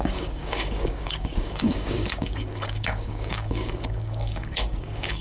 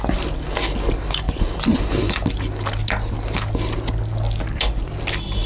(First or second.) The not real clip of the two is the first